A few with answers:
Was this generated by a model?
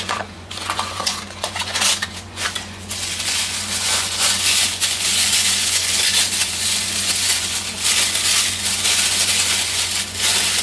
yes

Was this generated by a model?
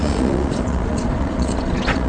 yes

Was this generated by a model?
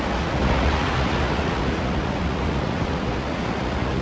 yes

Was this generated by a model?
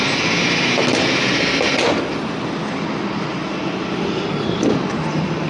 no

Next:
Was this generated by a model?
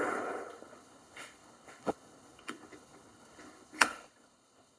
yes